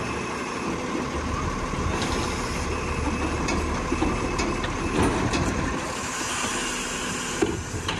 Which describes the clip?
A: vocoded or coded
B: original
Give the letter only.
B